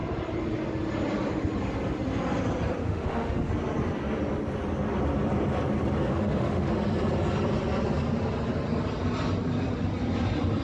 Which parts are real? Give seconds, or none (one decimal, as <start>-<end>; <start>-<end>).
0.0-2.8; 3.5-6.1; 6.7-10.6